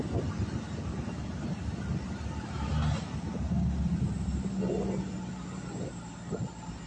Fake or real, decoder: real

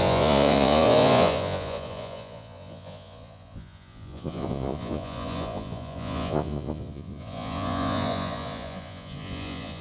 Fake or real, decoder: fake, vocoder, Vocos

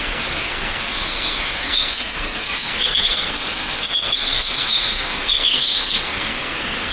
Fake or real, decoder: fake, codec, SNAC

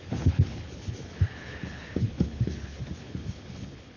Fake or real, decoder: fake, codec, HILCodec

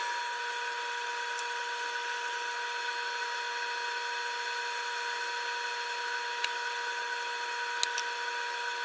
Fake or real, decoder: real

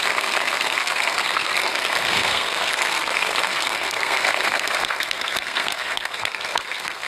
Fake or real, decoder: fake, codec, SNAC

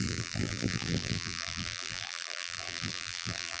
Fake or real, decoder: fake, vocoder, BigVGAN v2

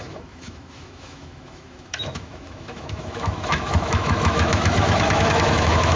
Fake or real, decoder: fake, autoencoder, DAC-VAE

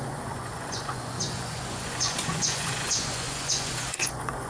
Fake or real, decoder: fake, vocoder, Vocos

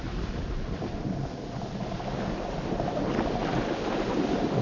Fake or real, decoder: real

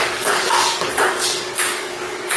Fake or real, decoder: fake, codec, DAC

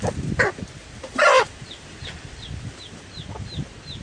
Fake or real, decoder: fake, vocoder, BigVGAN v2